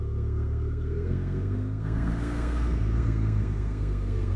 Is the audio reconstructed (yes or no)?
yes